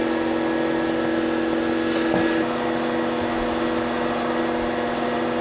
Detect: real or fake real